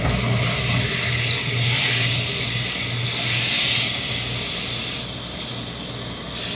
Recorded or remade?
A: recorded